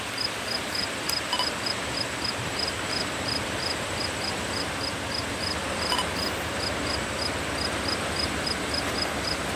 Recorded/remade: remade